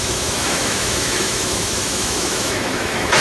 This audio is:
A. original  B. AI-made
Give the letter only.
B